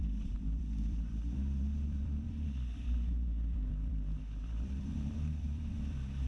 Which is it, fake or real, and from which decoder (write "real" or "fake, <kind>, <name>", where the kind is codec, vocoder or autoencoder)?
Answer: fake, vocoder, BigVGAN v2